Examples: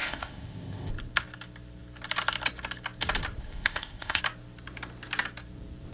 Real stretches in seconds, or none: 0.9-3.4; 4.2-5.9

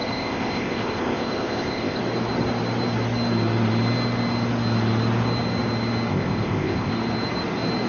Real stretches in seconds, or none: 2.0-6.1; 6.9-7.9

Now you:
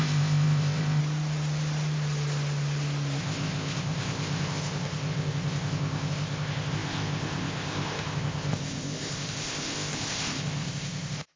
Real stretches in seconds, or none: 1.0-3.2